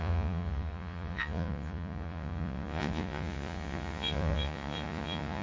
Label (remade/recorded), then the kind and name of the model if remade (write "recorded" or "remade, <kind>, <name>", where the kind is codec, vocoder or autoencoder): remade, vocoder, Vocos